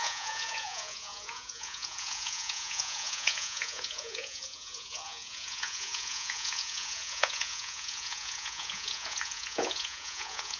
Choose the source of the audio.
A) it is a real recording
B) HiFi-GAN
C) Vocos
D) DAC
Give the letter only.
C